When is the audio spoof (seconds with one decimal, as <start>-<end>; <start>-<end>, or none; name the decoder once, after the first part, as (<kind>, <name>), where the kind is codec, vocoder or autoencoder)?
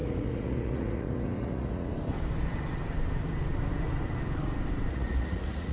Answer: 0.0-1.9 (vocoder, Vocos); 4.9-5.7